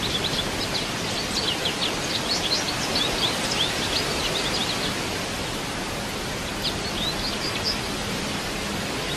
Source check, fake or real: real